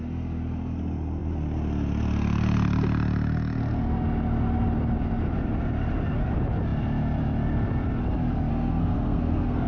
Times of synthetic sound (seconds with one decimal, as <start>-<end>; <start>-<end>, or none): 8.5-9.7

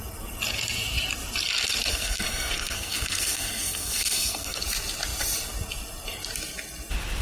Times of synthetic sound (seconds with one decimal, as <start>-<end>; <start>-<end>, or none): 1.9-4.6